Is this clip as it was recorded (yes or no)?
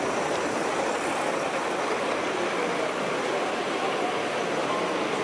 yes